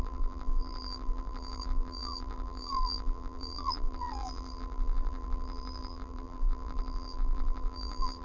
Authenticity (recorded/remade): remade